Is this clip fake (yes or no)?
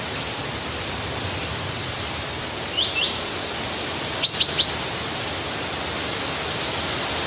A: no